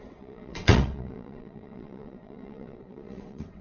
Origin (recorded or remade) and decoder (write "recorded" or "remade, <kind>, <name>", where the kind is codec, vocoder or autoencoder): remade, vocoder, WaveNeXt